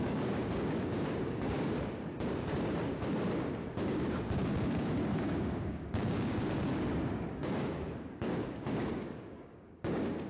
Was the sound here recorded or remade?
remade